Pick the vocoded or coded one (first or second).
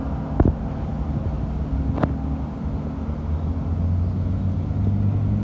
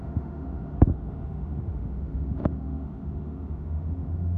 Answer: second